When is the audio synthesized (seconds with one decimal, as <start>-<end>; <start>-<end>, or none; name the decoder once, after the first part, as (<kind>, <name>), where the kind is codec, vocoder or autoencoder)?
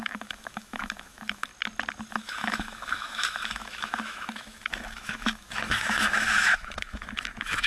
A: 0.0-1.5 (autoencoder, DAC-VAE); 2.1-7.7